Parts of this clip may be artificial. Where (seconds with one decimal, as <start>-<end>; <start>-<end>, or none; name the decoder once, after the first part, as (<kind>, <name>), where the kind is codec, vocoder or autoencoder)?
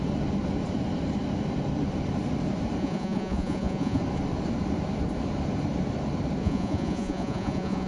2.8-4.0 (vocoder, Vocos); 6.4-7.9